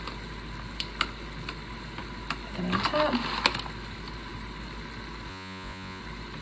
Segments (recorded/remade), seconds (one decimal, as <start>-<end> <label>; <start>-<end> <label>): 0.0-5.3 recorded; 5.3-6.0 remade; 6.0-6.4 recorded